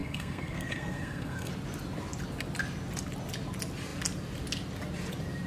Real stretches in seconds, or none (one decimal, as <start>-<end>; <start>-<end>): 1.5-5.5